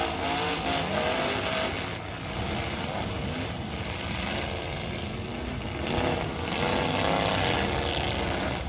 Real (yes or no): yes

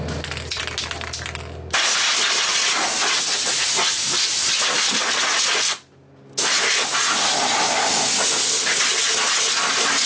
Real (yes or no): yes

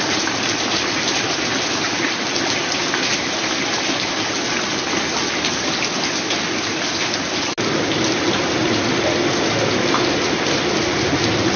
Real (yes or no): yes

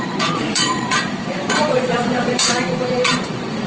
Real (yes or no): no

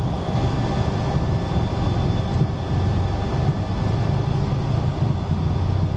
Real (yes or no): yes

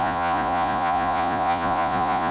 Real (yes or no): no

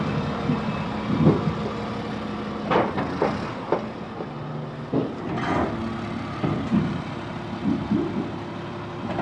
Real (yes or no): yes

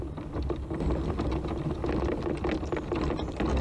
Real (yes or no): yes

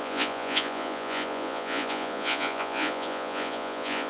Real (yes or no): no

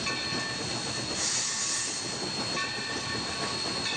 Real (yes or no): yes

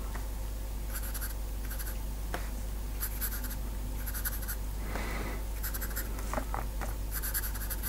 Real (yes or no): yes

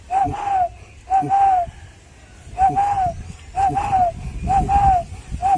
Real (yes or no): yes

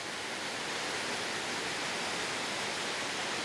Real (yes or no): yes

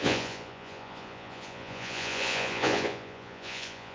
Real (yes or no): no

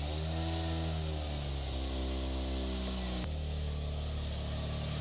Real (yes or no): yes